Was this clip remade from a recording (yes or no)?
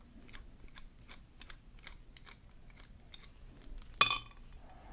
no